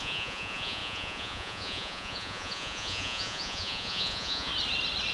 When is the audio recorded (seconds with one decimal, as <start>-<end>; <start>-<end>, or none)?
4.5-5.1